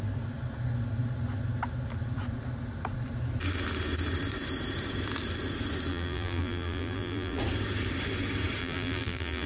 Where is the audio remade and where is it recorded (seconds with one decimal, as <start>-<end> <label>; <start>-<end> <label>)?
0.0-5.9 recorded; 5.9-7.4 remade; 7.4-8.6 recorded; 8.6-9.5 remade